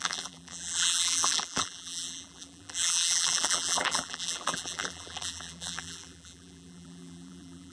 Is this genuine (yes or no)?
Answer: no